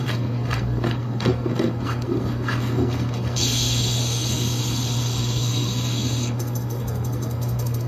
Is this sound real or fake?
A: fake